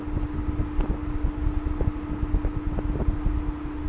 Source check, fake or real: real